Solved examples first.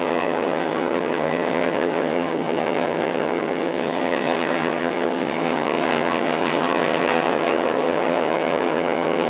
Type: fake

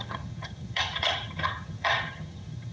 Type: fake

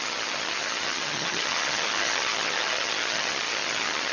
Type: fake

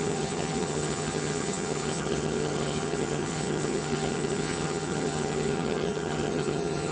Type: fake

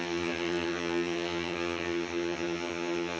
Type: fake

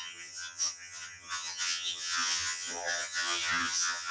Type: fake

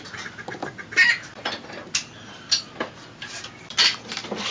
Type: real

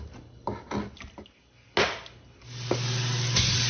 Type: real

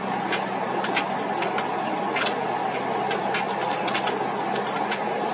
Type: real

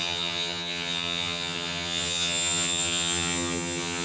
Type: fake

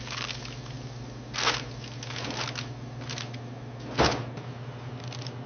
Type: real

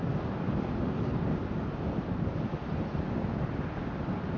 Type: real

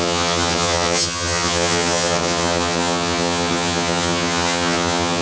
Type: fake